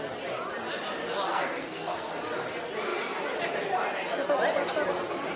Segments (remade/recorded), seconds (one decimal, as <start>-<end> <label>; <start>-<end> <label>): 0.0-1.3 recorded; 1.3-2.1 remade; 2.1-5.4 recorded